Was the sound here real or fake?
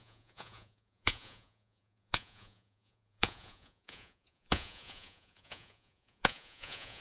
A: fake